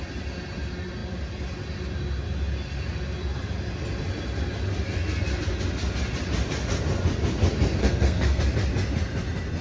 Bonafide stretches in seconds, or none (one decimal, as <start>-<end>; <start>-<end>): 0.0-7.8; 8.4-9.6